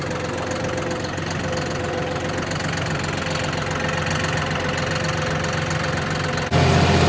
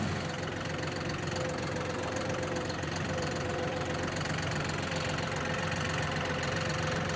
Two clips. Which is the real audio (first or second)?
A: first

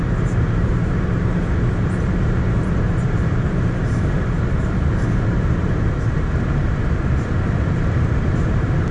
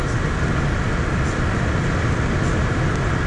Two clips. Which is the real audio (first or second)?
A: second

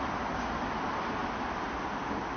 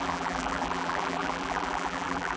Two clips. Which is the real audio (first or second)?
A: first